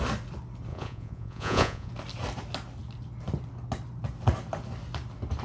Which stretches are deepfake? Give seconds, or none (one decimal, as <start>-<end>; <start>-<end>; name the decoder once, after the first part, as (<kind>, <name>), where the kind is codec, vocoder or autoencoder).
0.7-1.9 (vocoder, Vocos)

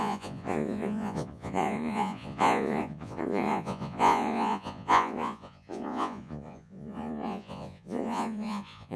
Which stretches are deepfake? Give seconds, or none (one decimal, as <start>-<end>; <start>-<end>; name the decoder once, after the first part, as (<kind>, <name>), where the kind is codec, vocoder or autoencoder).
0.0-9.0 (vocoder, Vocos)

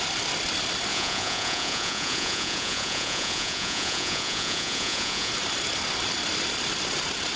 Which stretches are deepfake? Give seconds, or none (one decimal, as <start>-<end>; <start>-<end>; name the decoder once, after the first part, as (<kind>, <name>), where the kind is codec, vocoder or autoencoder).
0.9-5.3 (vocoder, Vocos)

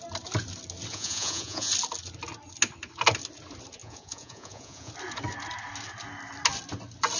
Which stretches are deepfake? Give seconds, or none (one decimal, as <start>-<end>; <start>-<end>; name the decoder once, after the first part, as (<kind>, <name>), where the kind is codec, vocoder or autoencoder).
0.9-1.7 (vocoder, Vocos); 3.8-4.9

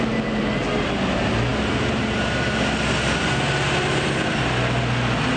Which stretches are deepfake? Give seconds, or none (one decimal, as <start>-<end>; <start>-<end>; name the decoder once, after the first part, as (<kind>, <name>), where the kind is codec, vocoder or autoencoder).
none

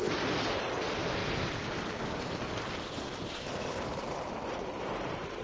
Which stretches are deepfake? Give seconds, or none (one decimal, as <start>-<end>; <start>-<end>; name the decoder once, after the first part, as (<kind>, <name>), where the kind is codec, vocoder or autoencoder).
none

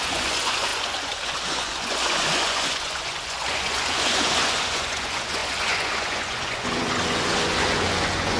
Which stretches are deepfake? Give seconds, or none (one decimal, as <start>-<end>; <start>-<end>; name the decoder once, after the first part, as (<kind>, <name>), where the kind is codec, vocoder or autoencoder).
0.0-8.4 (vocoder, Vocos)

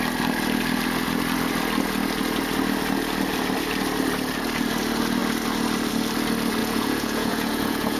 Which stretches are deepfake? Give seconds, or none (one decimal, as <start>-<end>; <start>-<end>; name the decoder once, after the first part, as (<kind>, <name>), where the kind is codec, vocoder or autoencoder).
6.6-8.0 (vocoder, Vocos)